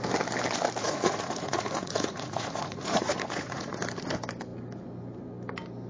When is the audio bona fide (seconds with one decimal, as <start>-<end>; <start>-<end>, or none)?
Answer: 0.0-0.8; 3.8-5.9